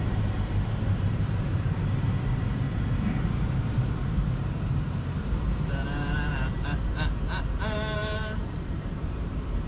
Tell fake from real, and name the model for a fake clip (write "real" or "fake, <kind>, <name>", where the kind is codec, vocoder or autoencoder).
fake, vocoder, BigVGAN v2